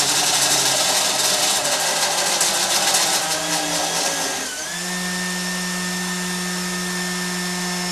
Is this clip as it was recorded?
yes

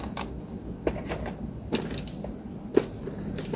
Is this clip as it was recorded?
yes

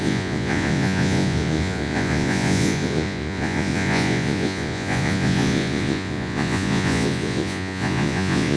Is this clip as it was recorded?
no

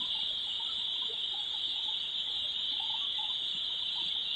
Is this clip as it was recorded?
no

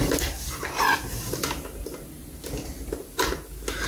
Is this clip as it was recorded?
yes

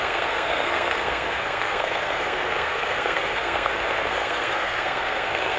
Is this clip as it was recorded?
no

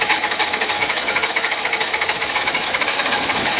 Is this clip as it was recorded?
no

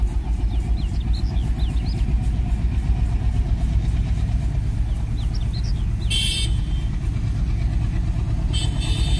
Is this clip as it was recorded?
yes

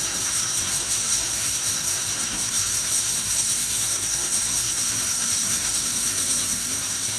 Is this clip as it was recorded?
no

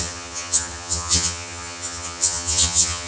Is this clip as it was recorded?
no